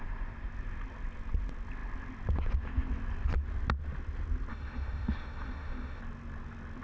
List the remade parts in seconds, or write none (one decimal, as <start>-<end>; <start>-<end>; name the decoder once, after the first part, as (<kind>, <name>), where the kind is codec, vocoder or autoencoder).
4.5-6.0 (autoencoder, DAC-VAE)